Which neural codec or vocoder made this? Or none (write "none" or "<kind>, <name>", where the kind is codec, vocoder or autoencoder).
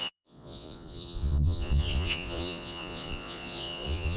vocoder, Vocos